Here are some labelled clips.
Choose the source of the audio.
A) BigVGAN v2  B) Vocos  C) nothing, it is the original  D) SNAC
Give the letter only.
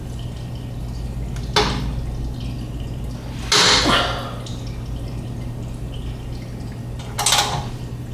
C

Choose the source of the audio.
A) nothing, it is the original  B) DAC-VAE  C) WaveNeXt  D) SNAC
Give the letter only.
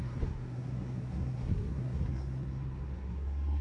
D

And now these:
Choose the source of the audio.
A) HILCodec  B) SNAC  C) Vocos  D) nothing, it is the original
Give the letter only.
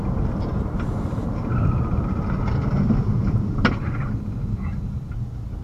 D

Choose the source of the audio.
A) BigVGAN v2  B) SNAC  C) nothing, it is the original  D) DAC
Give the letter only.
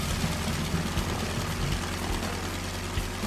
C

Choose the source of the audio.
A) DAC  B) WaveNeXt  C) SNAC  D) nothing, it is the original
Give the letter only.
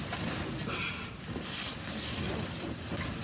D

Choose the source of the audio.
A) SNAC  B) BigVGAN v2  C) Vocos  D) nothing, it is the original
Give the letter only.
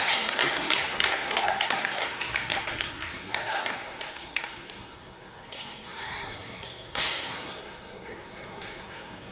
A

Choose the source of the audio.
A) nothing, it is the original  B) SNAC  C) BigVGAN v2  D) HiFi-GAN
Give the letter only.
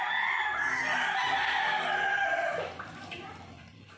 A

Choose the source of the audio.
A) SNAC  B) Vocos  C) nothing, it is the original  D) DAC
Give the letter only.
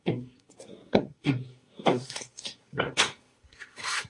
A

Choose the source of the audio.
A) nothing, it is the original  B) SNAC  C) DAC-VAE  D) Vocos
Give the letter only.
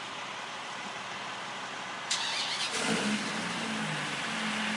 A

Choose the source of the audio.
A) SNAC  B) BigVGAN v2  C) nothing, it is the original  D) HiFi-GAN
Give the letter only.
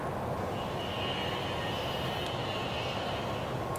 C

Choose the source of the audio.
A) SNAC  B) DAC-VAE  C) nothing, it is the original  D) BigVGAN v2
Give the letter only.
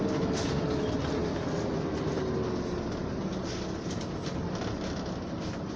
C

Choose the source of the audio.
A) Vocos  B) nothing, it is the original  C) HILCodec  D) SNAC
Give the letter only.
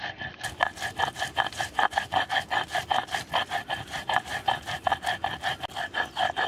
B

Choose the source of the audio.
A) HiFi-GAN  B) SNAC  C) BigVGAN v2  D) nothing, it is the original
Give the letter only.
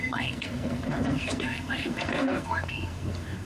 B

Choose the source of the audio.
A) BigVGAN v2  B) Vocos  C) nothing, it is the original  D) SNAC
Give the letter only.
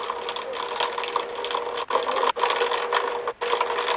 C